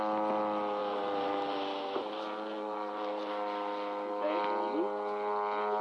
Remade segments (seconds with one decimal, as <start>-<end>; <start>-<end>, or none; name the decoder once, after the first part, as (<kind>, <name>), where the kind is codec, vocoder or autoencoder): 0.8-3.3 (vocoder, BigVGAN v2)